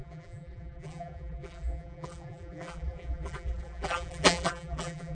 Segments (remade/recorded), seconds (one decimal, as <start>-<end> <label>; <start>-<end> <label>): 0.0-5.1 remade